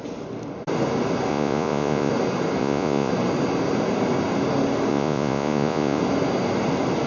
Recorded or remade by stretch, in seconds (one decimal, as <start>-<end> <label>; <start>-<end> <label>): 0.0-1.3 recorded; 1.3-2.1 remade; 2.1-2.6 recorded; 2.6-3.1 remade; 3.1-4.9 recorded; 4.9-6.0 remade; 6.0-7.1 recorded